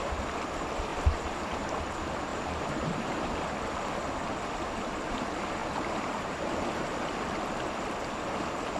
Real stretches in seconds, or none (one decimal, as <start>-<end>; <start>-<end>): 0.0-0.9; 1.6-2.3; 3.3-5.6; 6.6-8.8